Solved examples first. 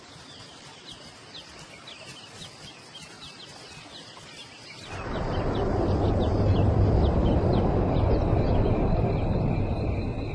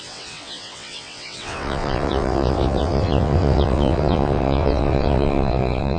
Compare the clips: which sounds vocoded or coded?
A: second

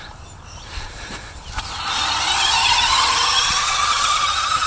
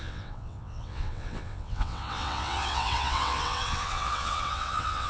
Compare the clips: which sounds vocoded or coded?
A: second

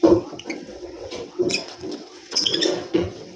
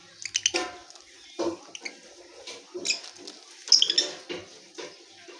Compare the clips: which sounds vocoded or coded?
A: first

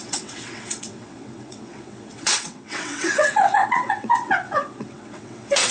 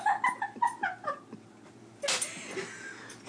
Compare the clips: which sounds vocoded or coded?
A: first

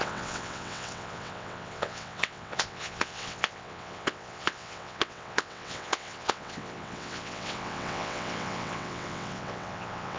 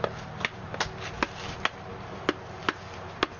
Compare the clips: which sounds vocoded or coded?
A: first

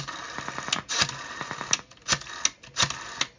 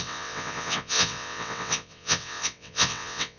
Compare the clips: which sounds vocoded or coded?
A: second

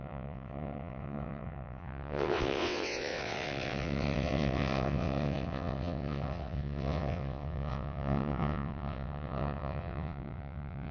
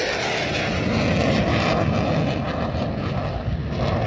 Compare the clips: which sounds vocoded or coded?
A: first